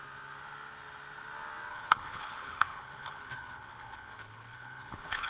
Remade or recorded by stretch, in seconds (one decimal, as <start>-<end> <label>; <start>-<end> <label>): 0.0-1.7 recorded; 1.7-5.3 remade